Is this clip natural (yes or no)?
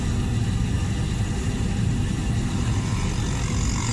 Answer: yes